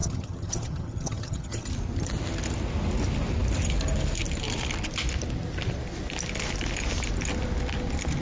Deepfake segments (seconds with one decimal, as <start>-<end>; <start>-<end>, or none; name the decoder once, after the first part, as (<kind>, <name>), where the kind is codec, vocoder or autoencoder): 0.0-1.7 (vocoder, HiFi-GAN)